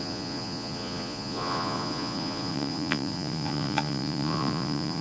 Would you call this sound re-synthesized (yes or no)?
yes